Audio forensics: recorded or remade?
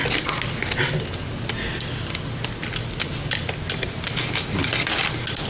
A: recorded